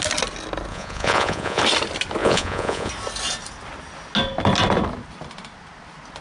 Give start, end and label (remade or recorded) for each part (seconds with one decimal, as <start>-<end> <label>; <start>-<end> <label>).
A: 0.0-0.7 recorded; 0.7-1.6 remade; 1.6-2.2 recorded; 2.2-2.9 remade; 2.9-6.2 recorded